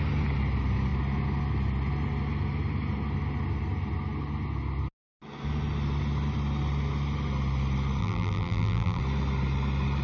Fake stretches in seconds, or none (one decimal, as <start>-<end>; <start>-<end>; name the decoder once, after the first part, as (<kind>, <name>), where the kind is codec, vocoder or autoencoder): 8.0-9.0 (vocoder, BigVGAN v2)